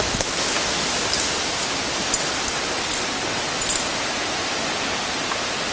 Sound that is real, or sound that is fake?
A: real